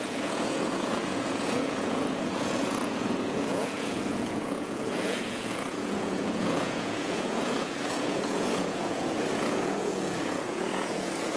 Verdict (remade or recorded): remade